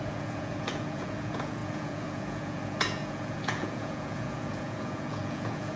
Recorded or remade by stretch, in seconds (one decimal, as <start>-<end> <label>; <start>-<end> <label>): 0.0-5.8 remade